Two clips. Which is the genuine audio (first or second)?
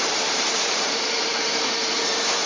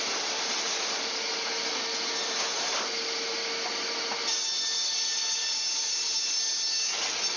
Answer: second